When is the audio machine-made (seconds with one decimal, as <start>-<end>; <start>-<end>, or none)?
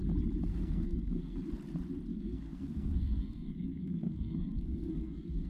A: 0.5-1.4; 2.1-5.5